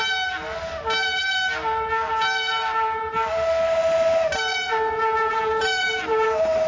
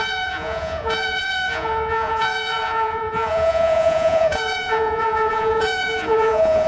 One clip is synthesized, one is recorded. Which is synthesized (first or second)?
second